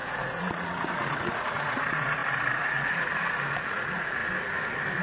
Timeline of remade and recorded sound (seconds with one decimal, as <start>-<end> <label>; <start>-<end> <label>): 0.0-4.2 remade; 4.2-5.0 recorded